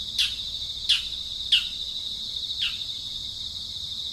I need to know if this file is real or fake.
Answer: real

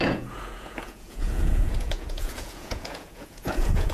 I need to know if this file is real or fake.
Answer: fake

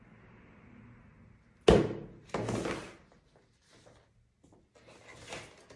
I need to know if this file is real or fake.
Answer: real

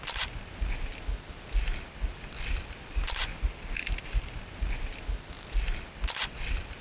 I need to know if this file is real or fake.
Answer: real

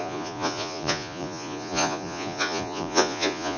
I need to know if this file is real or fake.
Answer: fake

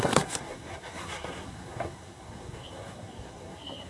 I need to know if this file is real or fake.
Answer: fake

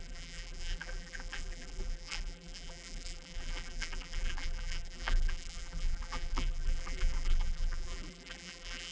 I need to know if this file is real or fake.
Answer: fake